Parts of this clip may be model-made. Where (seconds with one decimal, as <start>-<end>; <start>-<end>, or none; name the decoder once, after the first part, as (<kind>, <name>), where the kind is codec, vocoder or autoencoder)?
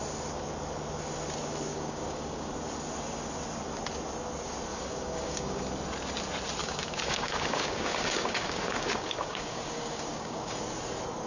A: 1.7-2.5 (codec, DAC); 4.7-5.6; 6.6-10.6